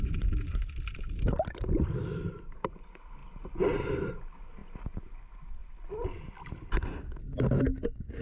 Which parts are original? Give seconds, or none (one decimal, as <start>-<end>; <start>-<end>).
0.0-8.2